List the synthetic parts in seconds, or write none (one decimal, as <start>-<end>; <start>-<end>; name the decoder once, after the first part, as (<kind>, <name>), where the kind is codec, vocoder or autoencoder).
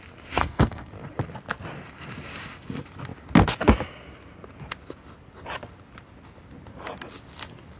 0.4-0.9 (codec, SNAC)